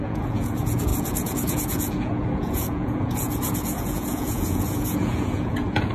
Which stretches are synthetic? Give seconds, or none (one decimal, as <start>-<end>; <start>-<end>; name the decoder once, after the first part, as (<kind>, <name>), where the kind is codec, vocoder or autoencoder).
0.0-5.9 (vocoder, Vocos)